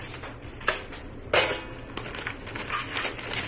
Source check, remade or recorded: recorded